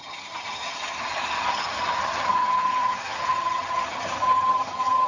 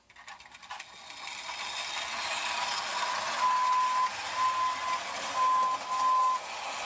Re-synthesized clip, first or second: first